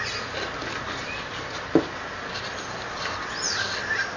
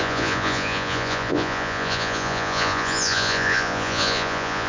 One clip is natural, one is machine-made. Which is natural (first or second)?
first